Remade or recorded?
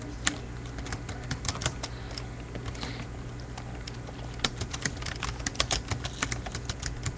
recorded